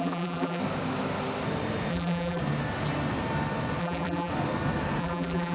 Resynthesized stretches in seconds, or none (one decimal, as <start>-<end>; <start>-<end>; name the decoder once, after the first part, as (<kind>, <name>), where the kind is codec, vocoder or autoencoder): 0.0-0.6 (vocoder, BigVGAN v2); 1.9-2.4; 3.8-4.3; 5.0-5.5

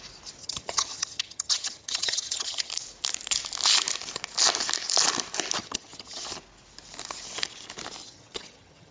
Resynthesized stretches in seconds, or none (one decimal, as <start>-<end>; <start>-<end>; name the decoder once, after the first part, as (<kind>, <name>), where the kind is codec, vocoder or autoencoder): 0.4-2.7 (vocoder, HiFi-GAN); 5.6-6.2; 8.0-8.9

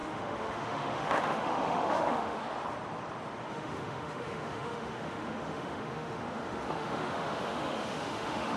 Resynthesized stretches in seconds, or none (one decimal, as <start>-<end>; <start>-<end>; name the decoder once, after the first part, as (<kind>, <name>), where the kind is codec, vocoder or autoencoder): 0.0-2.4 (autoencoder, DAC-VAE); 3.5-8.6